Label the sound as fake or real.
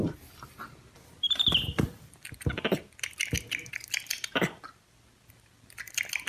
real